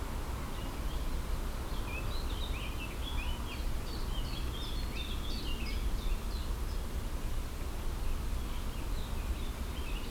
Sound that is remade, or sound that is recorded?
recorded